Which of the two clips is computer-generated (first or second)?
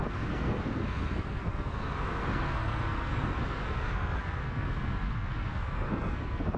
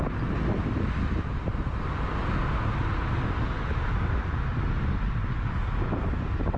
first